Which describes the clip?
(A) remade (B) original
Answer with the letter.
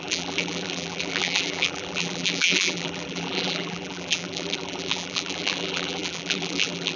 A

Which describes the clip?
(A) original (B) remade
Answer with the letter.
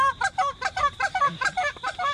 B